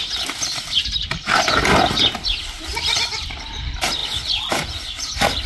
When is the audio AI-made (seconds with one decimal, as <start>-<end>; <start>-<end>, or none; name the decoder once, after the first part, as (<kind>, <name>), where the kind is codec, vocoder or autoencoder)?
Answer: none